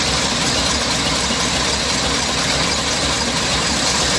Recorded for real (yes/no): yes